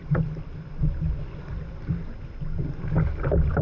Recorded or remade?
recorded